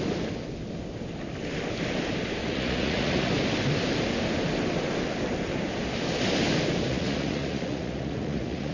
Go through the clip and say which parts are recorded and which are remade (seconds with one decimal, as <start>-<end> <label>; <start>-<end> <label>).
0.0-2.4 recorded; 2.4-3.3 remade; 3.3-6.9 recorded; 6.9-8.7 remade